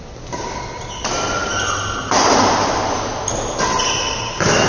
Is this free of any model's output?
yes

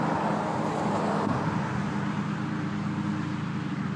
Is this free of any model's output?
yes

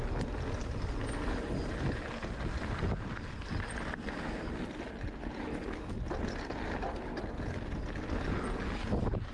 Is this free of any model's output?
yes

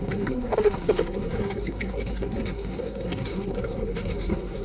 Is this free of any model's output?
no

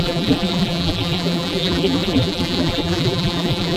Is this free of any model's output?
no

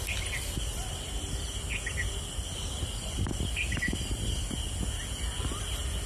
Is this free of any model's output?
yes